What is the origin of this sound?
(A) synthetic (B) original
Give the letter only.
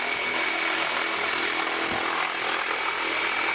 B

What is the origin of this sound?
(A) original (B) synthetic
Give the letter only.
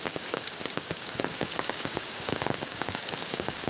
B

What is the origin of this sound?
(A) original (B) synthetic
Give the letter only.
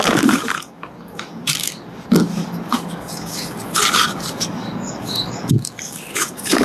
B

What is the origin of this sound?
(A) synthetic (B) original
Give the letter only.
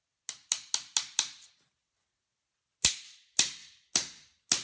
B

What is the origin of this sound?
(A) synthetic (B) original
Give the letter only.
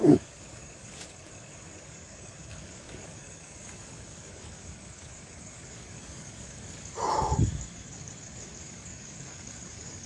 A